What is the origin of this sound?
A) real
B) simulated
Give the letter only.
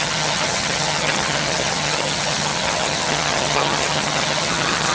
B